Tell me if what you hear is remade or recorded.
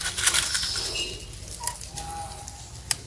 recorded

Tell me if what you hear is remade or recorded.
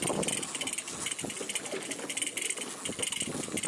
recorded